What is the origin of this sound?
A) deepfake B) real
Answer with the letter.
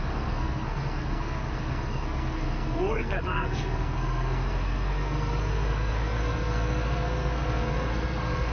A